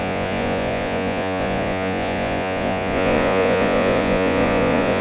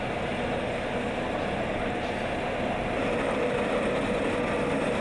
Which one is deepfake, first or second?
first